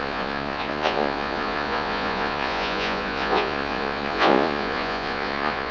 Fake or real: fake